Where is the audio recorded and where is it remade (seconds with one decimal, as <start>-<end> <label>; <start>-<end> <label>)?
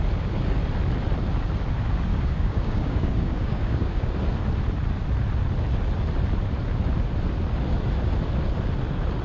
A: 0.0-2.1 recorded; 2.1-4.1 remade; 4.1-9.2 recorded